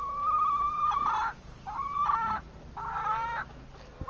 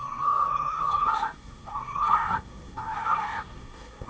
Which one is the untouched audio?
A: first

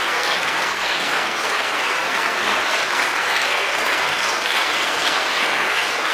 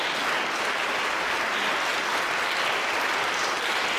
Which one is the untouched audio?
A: second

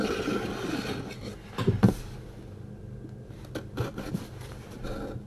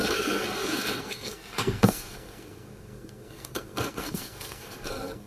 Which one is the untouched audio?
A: first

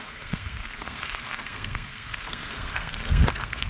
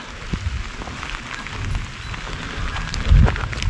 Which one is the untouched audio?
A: second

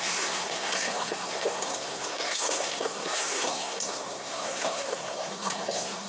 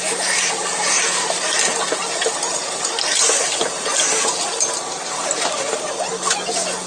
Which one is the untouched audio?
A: second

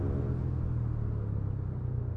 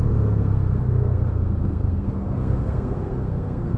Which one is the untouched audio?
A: first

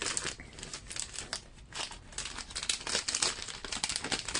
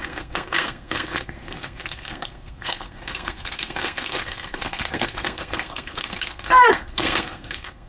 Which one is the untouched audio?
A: first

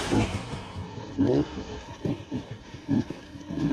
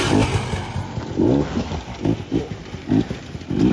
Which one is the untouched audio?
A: second